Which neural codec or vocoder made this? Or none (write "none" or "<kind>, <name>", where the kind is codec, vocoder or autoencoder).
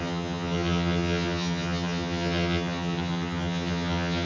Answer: vocoder, HiFi-GAN